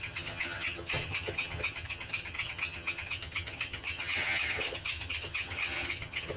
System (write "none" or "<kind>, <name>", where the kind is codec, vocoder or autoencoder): vocoder, HiFi-GAN